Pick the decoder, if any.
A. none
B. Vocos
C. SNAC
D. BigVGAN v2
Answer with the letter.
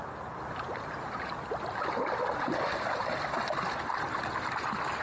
A